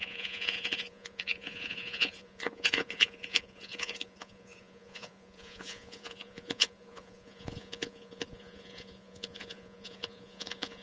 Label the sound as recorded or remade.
remade